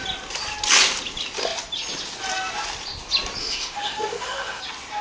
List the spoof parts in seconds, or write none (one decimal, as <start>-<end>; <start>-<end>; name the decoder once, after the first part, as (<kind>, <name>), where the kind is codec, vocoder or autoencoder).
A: 3.4-4.6 (autoencoder, DAC-VAE)